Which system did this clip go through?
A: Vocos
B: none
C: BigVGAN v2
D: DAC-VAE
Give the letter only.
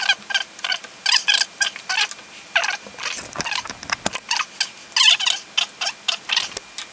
B